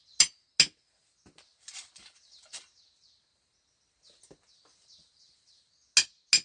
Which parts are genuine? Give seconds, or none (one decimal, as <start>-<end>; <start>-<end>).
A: 0.0-1.5; 2.7-6.4